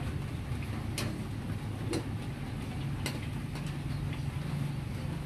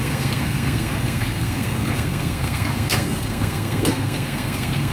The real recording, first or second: first